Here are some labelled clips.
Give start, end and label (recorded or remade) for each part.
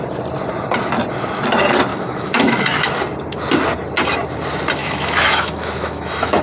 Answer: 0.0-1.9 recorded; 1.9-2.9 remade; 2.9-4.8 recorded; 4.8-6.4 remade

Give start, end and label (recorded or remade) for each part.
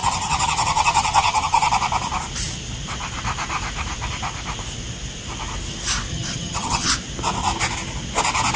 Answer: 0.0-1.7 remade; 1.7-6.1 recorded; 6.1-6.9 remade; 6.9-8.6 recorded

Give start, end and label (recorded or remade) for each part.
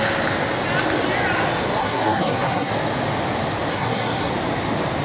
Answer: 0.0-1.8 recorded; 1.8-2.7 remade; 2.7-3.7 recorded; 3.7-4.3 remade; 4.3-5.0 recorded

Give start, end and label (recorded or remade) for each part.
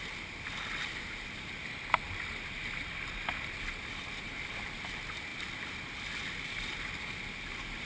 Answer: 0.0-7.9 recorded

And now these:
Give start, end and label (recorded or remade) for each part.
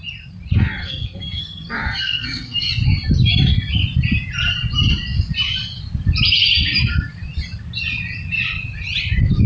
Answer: 0.0-0.8 recorded; 0.8-2.7 remade; 2.7-9.5 recorded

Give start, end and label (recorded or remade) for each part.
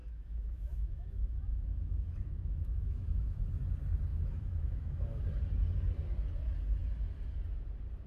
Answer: 0.0-3.4 remade; 3.4-4.1 recorded; 4.1-5.2 remade; 5.2-8.1 recorded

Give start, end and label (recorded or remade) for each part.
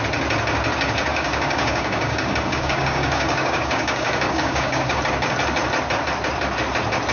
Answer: 0.0-1.1 recorded; 1.1-5.0 remade; 5.0-7.1 recorded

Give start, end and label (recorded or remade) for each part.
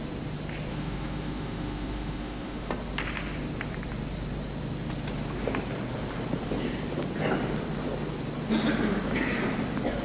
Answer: 0.0-0.7 recorded; 0.7-2.7 remade; 2.7-10.0 recorded